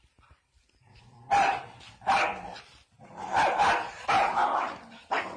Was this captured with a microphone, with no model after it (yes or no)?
no